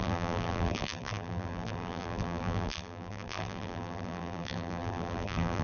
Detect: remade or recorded remade